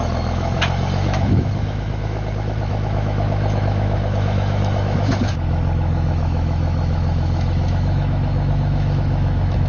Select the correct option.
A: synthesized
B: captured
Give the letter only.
A